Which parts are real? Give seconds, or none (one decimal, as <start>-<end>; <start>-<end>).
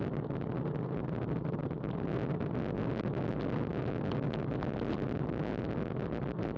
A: 0.0-6.6